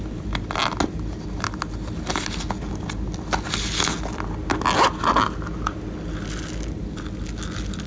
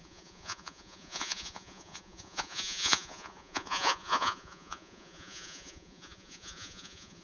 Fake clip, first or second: second